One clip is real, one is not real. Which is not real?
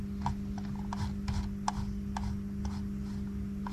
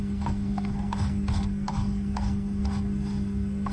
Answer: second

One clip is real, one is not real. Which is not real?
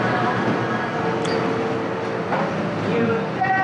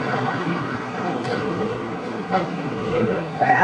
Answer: second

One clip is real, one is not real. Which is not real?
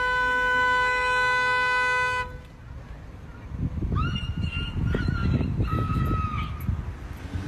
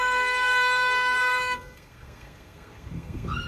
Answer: second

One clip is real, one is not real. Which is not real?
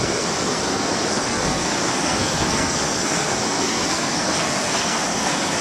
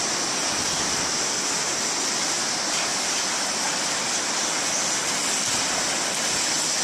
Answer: first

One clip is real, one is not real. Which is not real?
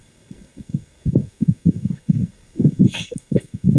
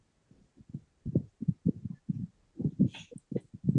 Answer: first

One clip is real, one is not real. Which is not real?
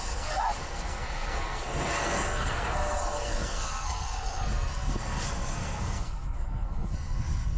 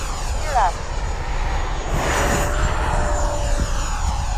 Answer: first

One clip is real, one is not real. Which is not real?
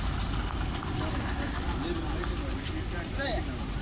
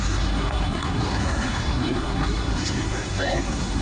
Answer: second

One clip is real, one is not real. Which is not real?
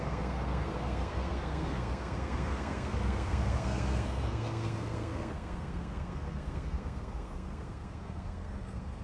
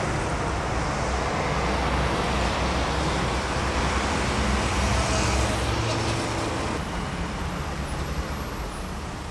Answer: first